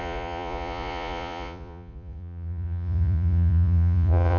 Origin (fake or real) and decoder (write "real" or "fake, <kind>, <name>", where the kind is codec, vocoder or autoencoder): fake, vocoder, Vocos